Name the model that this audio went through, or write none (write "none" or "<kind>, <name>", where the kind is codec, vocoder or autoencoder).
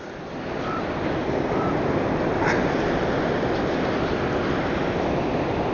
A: none